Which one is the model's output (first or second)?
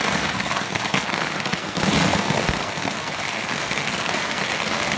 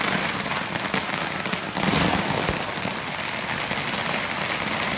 first